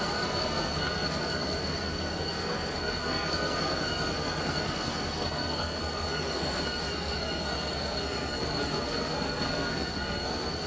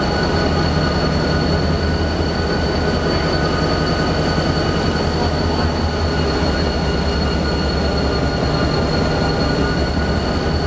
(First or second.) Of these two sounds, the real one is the second